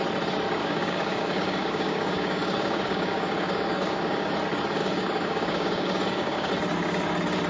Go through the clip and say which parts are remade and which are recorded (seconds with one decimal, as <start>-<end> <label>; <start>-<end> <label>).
0.0-0.6 recorded; 0.6-4.3 remade; 4.3-4.8 recorded; 4.8-6.5 remade; 6.5-7.5 recorded